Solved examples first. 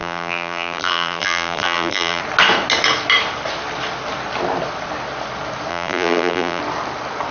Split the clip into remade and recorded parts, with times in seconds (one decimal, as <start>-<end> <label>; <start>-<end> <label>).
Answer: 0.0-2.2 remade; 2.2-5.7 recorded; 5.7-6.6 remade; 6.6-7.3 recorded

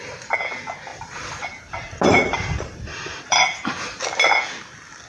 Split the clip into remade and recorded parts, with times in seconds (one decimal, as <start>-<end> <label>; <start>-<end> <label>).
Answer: 0.0-0.9 recorded; 0.9-4.0 remade; 4.0-5.1 recorded

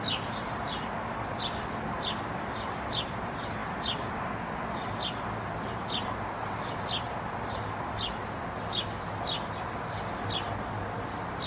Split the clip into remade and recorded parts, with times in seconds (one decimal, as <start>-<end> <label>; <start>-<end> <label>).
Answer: 0.0-11.5 recorded